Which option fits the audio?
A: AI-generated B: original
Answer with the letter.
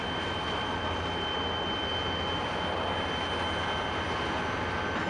B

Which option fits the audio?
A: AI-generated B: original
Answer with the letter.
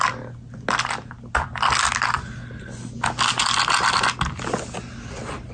B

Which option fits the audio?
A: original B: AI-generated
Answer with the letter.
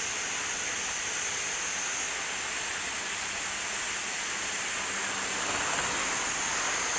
A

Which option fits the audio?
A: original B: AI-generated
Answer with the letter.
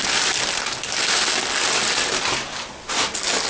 A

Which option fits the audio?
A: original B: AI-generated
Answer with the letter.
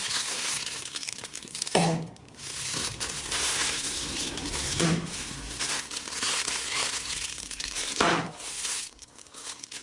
B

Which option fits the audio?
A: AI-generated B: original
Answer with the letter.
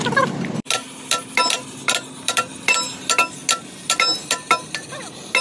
B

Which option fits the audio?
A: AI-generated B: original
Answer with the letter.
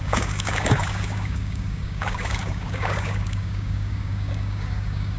A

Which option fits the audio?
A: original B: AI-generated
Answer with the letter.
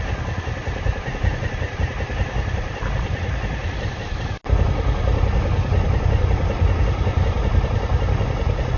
A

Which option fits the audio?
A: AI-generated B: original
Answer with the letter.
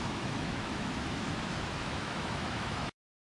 A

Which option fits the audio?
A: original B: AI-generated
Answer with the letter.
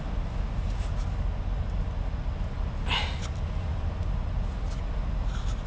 A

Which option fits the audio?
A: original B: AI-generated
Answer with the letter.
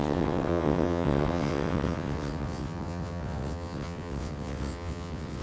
B